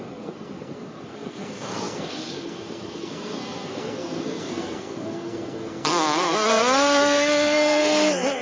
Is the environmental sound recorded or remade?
remade